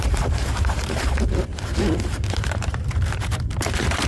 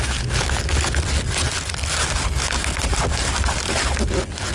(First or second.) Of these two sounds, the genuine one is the second